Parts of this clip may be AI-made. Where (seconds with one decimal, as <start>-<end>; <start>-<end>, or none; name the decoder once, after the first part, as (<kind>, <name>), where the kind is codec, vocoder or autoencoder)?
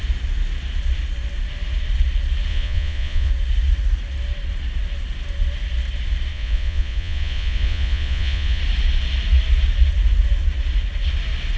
2.5-3.3 (vocoder, Vocos); 6.3-8.6